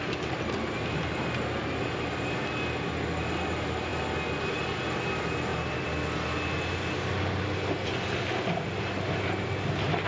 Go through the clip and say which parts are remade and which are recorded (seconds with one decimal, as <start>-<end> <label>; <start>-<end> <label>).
0.0-10.1 recorded